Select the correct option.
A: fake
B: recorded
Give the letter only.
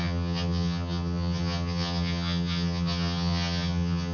A